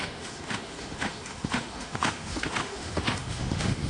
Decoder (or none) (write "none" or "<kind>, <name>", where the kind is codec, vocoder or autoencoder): autoencoder, DAC-VAE